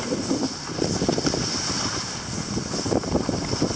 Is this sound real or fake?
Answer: real